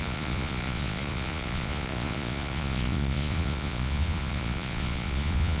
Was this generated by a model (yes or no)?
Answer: yes